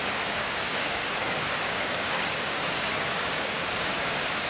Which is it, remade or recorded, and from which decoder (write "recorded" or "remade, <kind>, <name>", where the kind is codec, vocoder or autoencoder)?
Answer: remade, codec, DAC